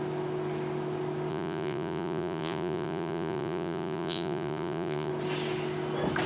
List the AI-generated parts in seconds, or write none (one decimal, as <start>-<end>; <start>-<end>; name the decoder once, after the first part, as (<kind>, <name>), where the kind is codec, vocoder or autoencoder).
1.3-5.1 (vocoder, Vocos)